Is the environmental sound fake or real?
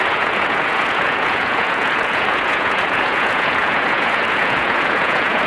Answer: fake